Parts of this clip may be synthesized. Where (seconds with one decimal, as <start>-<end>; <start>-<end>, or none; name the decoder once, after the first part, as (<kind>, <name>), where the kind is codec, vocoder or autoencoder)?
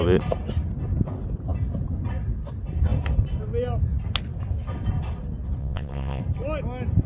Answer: 5.6-6.2 (vocoder, WaveNeXt)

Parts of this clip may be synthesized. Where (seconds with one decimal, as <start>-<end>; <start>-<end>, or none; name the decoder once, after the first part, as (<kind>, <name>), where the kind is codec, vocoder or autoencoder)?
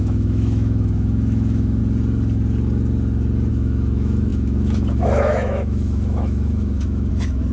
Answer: 0.0-1.8 (autoencoder, DAC-VAE); 3.5-7.5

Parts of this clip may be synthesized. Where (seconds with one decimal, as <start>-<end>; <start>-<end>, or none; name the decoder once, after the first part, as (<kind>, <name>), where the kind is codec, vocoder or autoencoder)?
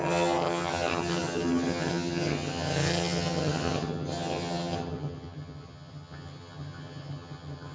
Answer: 0.0-7.7 (vocoder, HiFi-GAN)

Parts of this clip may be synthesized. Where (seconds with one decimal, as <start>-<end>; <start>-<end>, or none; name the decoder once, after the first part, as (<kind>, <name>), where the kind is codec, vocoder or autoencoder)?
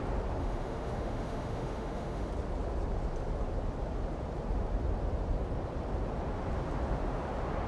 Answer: 0.4-2.3 (autoencoder, DAC-VAE)